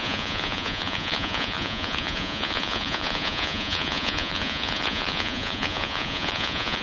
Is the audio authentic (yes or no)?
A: no